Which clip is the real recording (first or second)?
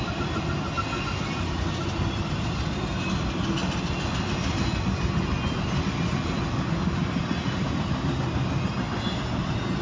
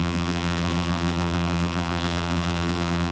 first